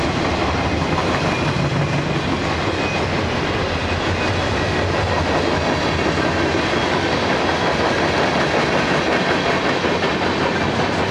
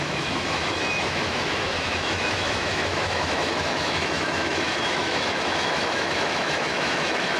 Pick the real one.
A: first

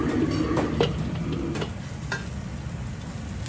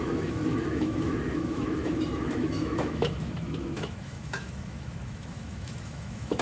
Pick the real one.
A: first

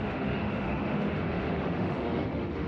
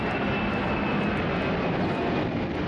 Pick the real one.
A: second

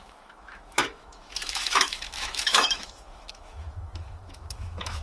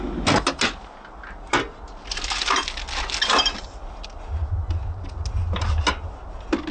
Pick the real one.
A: second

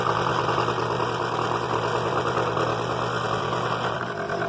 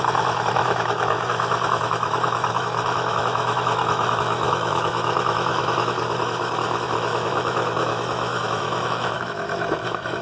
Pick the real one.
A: first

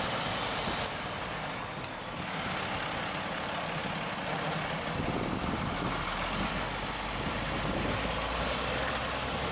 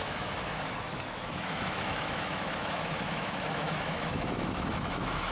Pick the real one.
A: first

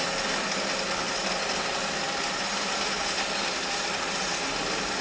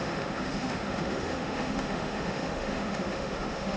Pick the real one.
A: first